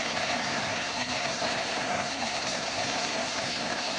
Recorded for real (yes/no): no